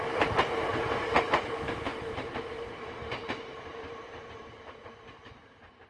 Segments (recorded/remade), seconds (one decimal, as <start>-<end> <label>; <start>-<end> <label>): 0.0-1.9 recorded; 1.9-2.4 remade; 2.4-3.0 recorded; 3.0-4.2 remade; 4.2-5.9 recorded